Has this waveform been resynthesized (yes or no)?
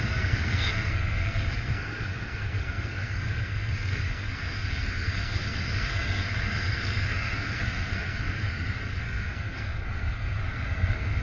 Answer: yes